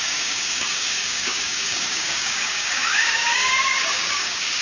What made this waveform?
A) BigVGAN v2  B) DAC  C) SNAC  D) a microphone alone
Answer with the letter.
B